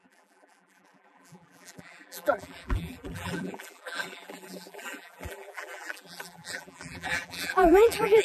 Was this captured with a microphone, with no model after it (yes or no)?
no